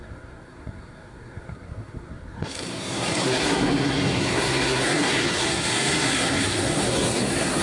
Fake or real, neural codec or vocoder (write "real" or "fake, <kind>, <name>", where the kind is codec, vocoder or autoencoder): fake, codec, SNAC